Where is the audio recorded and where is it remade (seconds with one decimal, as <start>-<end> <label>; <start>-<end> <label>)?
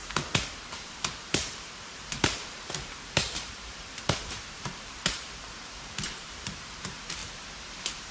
0.0-0.6 recorded; 0.6-8.1 remade